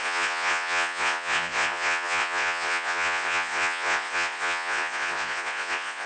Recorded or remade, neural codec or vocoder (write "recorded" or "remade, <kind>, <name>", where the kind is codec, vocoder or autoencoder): remade, vocoder, Vocos